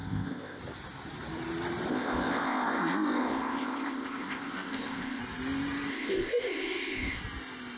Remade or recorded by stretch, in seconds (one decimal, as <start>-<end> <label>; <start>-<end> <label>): 0.0-0.6 remade; 0.6-1.9 recorded; 1.9-5.2 remade; 5.2-5.9 recorded; 5.9-7.2 remade; 7.2-7.8 recorded